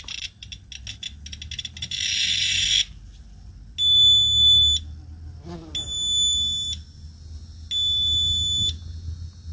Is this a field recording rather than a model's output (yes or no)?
yes